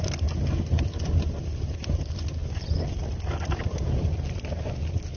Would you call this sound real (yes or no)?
yes